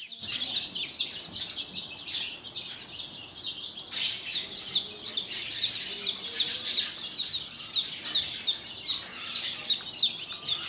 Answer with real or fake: real